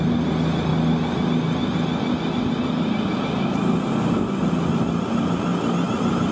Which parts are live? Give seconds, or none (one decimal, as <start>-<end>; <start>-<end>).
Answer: 0.0-6.3